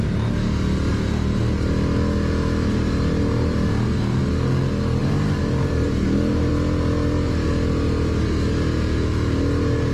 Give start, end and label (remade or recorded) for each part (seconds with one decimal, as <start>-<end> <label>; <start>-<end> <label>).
0.0-5.0 recorded; 5.0-6.5 remade; 6.5-9.9 recorded